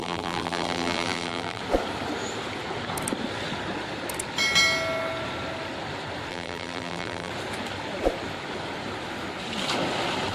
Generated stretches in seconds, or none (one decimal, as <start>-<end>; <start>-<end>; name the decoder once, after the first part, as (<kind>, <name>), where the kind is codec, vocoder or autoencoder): 0.0-1.6 (vocoder, BigVGAN v2); 6.3-7.3

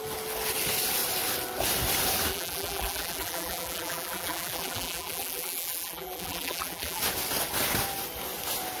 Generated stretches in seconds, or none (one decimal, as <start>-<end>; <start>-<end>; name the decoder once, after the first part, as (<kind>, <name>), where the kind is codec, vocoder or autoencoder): 2.3-7.0 (vocoder, BigVGAN v2)

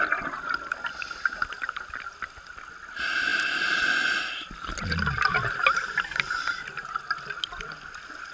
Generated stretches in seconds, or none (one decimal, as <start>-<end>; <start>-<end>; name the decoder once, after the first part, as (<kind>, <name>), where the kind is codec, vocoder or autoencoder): none

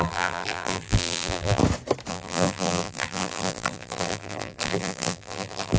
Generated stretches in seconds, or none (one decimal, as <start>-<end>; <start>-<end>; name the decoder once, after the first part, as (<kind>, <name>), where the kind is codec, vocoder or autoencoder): 0.0-1.6 (vocoder, BigVGAN v2); 2.1-5.8

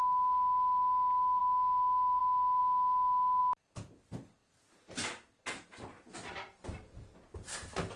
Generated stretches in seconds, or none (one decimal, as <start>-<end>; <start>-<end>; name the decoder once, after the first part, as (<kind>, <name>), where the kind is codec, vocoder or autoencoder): none

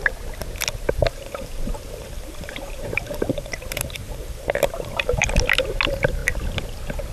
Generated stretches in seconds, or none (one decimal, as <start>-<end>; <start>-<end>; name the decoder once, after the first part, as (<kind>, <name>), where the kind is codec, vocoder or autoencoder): 1.0-5.3 (vocoder, BigVGAN v2)